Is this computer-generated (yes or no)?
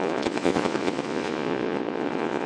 yes